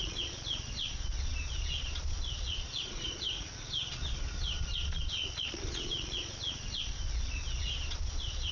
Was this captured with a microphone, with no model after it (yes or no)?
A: no